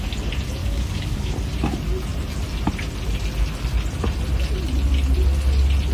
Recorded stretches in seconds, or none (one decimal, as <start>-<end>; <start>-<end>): 0.0-0.6; 1.3-5.9